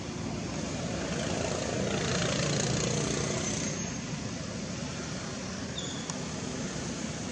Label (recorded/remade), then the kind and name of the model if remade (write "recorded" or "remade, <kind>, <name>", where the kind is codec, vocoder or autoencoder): recorded